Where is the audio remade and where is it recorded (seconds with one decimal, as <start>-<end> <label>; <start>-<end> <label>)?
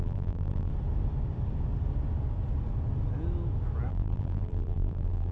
0.0-0.7 remade; 0.7-3.9 recorded; 3.9-5.3 remade